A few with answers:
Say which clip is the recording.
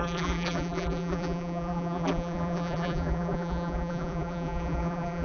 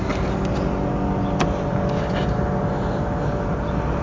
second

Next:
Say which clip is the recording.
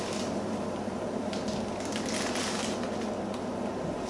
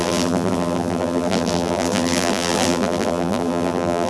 first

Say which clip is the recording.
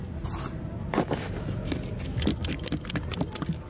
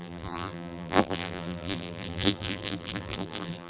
first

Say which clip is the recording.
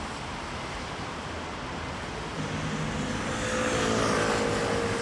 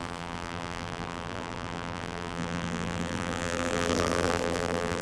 first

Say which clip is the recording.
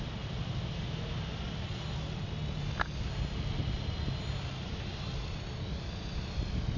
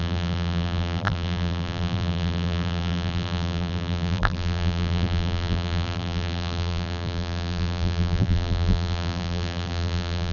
first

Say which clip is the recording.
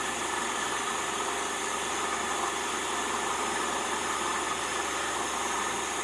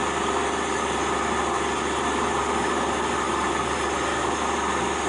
second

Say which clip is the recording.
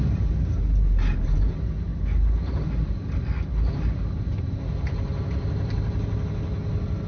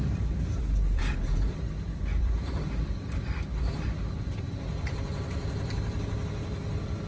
first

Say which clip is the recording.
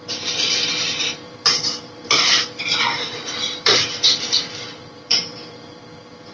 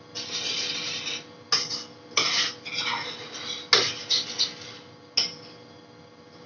second